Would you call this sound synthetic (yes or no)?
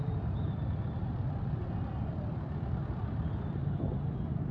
yes